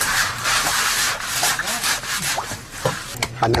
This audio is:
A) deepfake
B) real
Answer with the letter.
A